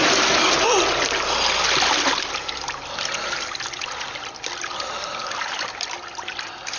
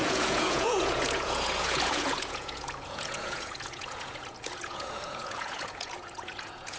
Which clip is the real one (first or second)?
first